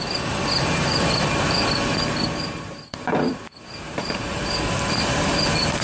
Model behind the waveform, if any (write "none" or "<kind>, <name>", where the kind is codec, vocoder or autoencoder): vocoder, BigVGAN v2